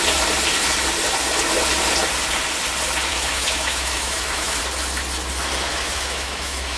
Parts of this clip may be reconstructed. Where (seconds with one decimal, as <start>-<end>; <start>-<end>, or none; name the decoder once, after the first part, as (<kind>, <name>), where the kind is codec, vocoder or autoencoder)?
3.1-4.6 (autoencoder, DAC-VAE); 5.7-6.8